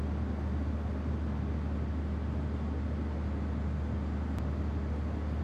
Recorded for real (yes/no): yes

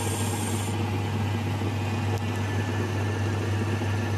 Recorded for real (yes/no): yes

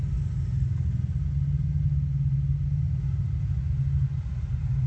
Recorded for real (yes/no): yes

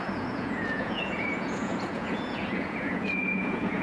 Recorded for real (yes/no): no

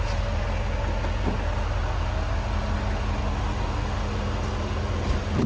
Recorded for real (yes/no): yes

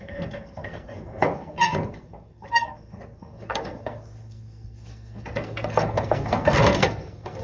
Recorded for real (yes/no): no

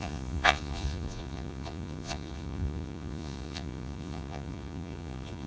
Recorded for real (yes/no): no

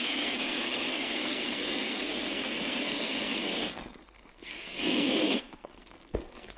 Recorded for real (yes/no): no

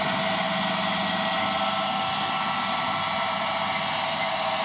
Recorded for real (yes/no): yes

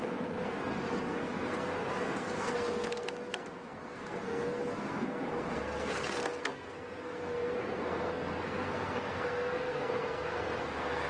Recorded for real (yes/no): no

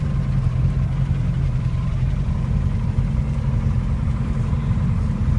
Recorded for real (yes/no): no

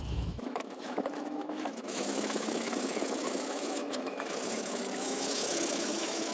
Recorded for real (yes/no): no